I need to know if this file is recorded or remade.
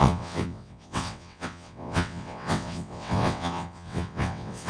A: remade